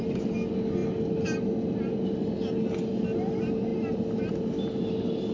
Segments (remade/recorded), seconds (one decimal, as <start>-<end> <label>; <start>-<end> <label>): 0.0-5.3 recorded